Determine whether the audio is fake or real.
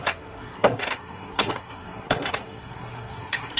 fake